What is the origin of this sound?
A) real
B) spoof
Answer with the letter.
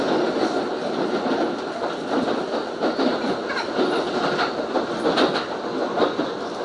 A